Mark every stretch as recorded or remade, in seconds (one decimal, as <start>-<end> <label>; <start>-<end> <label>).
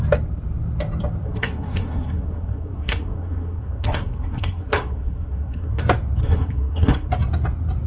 0.0-1.2 recorded; 1.2-5.8 remade; 5.8-6.2 recorded; 6.2-7.1 remade; 7.1-7.9 recorded